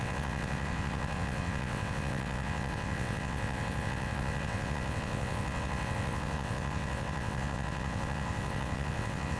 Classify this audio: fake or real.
fake